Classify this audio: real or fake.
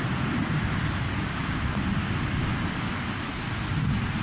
real